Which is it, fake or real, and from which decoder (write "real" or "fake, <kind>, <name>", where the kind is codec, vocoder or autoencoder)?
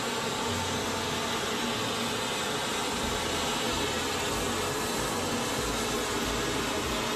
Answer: real